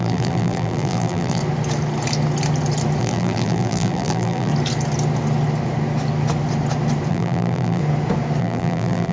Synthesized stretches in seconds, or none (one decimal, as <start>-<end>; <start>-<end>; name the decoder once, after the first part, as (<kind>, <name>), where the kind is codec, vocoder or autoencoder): 0.0-1.4 (vocoder, BigVGAN v2); 3.0-4.5; 7.1-7.8; 8.4-9.1